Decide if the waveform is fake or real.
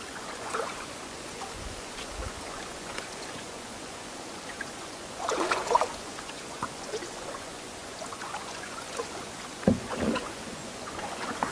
fake